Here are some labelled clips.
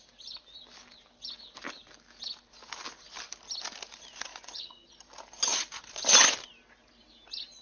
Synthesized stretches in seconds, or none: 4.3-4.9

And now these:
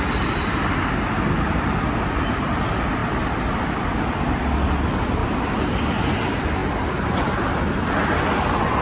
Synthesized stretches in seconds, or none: 3.0-3.6; 5.2-5.7

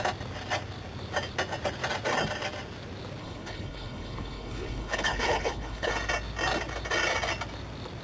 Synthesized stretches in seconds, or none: 3.2-5.9